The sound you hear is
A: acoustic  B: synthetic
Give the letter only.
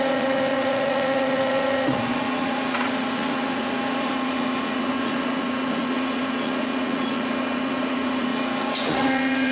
B